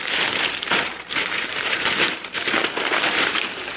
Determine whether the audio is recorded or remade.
remade